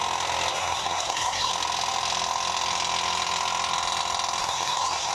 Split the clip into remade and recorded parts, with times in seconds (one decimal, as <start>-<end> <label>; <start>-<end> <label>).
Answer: 0.0-0.5 recorded; 0.5-1.5 remade; 1.5-4.4 recorded; 4.4-5.1 remade